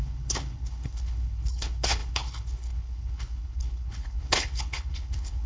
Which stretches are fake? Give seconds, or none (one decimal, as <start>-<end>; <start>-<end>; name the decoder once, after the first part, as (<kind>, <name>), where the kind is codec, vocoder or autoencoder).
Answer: 0.0-5.5 (codec, HILCodec)